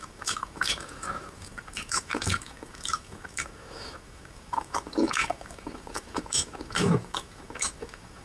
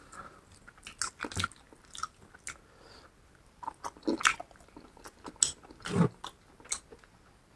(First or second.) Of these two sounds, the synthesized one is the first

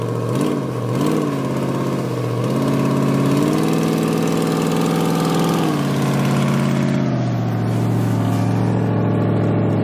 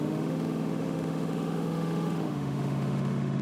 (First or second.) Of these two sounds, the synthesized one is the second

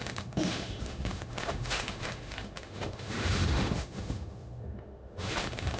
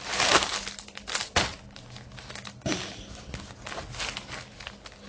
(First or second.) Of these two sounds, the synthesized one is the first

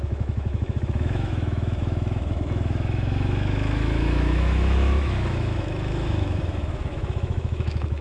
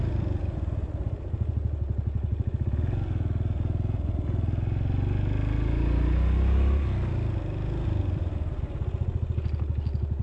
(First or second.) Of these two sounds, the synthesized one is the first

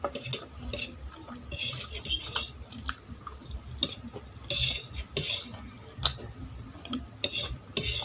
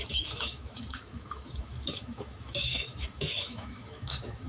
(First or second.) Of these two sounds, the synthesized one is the second